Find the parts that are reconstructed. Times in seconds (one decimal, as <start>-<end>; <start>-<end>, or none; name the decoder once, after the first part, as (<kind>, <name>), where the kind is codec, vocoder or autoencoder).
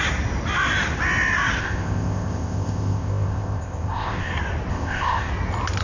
1.6-4.3 (codec, ZipCodec); 4.7-5.3